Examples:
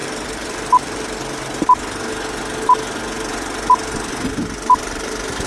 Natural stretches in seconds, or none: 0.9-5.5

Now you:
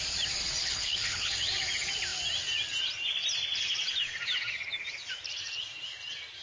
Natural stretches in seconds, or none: 0.0-0.6; 1.3-6.4